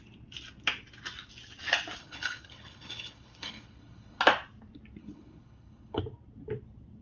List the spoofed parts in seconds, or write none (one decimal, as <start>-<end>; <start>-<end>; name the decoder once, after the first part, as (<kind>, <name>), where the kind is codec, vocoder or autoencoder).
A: 2.0-4.2 (codec, HILCodec); 5.0-6.0